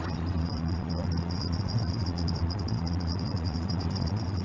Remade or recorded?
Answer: remade